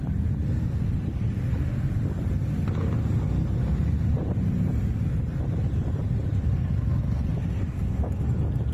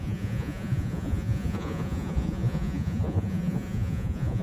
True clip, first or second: first